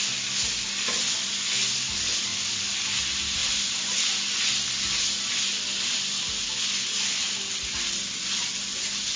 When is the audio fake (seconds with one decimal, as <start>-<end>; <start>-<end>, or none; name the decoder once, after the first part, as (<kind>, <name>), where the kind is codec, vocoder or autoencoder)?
none